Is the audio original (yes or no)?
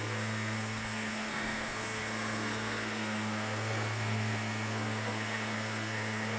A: no